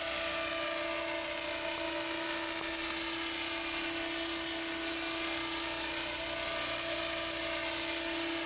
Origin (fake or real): real